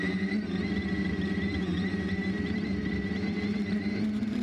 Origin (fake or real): fake